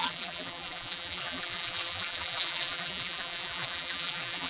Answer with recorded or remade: remade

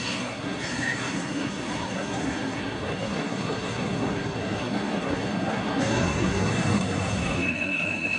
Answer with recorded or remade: remade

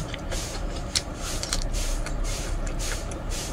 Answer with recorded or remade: remade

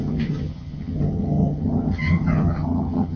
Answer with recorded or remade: remade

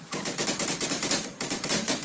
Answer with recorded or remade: remade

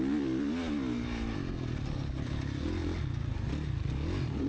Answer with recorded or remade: recorded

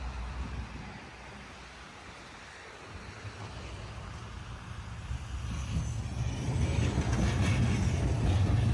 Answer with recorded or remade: recorded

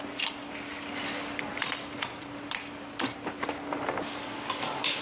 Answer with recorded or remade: recorded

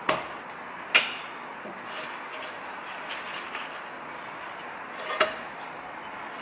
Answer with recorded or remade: recorded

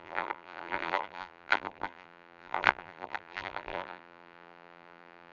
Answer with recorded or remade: remade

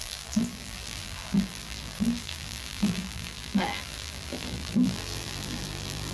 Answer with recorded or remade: remade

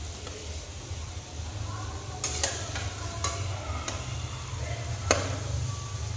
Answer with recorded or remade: recorded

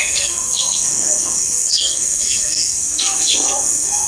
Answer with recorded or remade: remade